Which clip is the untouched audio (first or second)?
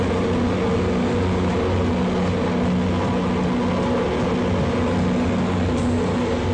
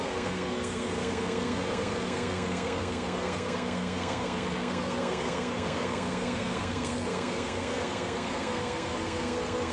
first